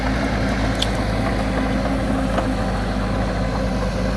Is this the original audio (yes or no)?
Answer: yes